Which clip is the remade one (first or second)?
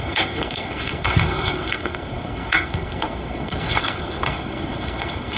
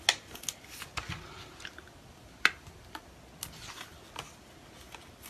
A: first